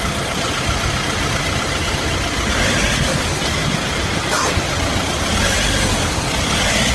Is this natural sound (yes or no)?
yes